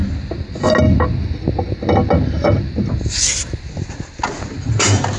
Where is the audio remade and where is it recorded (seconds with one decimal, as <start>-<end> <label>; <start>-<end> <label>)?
0.0-5.2 recorded